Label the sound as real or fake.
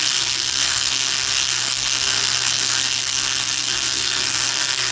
fake